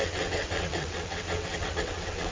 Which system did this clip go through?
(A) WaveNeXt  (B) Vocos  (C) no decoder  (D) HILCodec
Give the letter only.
A